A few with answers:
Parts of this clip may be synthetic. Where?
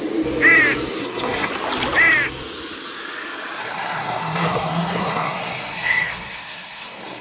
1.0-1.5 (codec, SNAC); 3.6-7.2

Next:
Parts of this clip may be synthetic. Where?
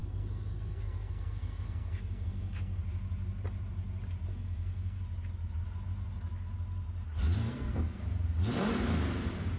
0.0-2.8 (codec, SNAC); 4.3-5.0; 7.4-8.0